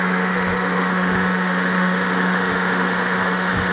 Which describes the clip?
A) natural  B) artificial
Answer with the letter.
B